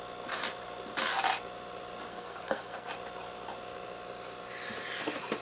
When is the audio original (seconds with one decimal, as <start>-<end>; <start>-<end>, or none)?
0.0-2.1; 2.9-5.4